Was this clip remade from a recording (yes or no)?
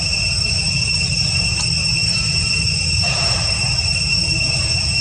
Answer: yes